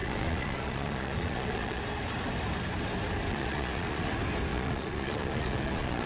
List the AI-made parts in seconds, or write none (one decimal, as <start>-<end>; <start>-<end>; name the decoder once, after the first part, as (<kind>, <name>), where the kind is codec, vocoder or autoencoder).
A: 0.0-1.8 (vocoder, Vocos); 3.3-4.1; 4.5-6.1